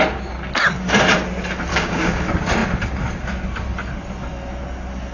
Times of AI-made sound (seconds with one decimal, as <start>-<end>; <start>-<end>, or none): 1.7-2.2